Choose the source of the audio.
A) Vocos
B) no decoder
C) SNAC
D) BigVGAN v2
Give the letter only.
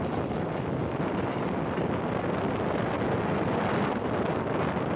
B